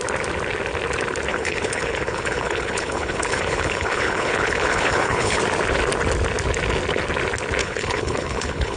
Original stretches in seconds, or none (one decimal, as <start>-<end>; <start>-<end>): 0.0-1.3; 5.4-7.6